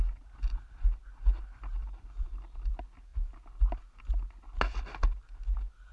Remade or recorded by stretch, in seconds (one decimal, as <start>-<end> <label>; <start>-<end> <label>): 0.0-5.9 recorded